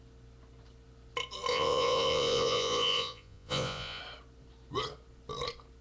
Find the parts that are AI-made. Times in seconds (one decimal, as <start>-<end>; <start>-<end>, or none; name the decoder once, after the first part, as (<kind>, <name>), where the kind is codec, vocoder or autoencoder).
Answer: 1.5-4.0 (vocoder, Vocos)